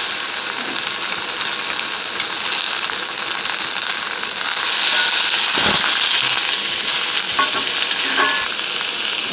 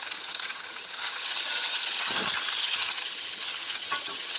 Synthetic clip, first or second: second